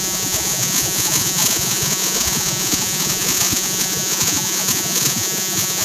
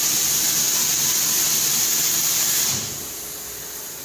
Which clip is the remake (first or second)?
first